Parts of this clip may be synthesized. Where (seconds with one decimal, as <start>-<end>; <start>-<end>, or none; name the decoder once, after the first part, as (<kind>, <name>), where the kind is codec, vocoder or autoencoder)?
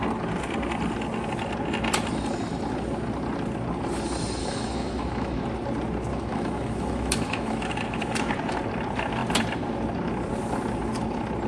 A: 4.4-5.4 (autoencoder, DAC-VAE); 6.1-8.3